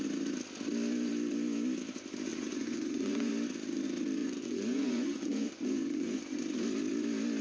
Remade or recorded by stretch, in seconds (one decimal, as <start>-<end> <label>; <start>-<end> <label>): 0.0-2.3 recorded; 2.3-3.3 remade; 3.3-4.2 recorded; 4.2-6.4 remade; 6.4-7.4 recorded